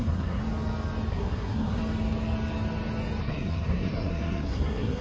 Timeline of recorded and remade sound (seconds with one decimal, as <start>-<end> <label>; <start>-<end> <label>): 0.0-0.4 remade; 0.4-1.1 recorded; 1.1-1.8 remade; 1.8-3.2 recorded; 3.2-5.0 remade